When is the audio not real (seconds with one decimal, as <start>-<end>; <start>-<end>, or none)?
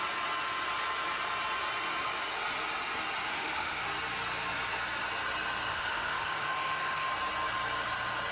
3.3-3.8; 5.7-7.1